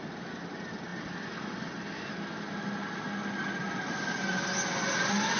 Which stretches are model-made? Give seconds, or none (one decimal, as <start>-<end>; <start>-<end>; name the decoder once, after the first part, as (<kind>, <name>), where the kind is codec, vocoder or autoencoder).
none

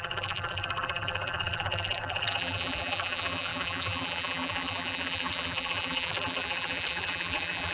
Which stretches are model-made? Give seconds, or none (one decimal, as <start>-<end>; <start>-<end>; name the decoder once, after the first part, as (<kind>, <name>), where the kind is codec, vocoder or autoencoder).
0.0-7.7 (vocoder, BigVGAN v2)

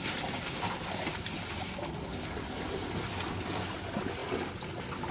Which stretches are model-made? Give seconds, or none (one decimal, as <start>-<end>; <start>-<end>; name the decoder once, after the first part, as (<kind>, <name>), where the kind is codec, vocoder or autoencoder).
none

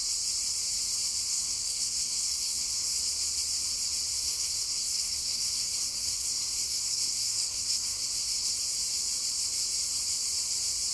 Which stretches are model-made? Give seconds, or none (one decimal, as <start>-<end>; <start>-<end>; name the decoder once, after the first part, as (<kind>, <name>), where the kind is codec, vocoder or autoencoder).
1.3-3.0 (codec, SNAC); 4.1-8.5

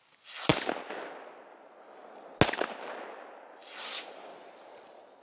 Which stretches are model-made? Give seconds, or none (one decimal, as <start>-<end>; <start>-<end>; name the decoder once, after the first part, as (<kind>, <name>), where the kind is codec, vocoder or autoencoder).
4.3-5.2 (vocoder, BigVGAN v2)

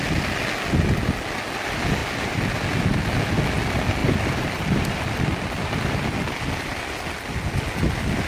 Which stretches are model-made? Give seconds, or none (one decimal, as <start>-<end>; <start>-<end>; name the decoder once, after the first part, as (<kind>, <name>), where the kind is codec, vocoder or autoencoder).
2.0-2.7 (vocoder, BigVGAN v2); 4.0-6.8

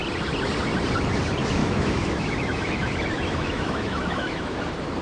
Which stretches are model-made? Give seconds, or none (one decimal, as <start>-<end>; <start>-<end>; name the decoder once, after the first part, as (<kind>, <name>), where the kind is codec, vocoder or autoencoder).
1.6-4.6 (autoencoder, DAC-VAE)